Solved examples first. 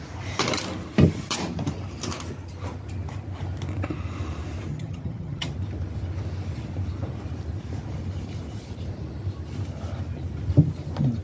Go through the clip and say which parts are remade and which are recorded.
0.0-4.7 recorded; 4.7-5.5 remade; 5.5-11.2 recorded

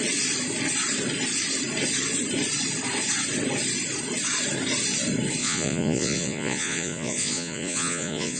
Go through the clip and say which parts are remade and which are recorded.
0.0-5.4 recorded; 5.4-8.4 remade